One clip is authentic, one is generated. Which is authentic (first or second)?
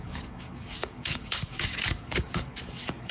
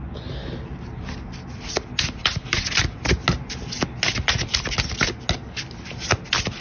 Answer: second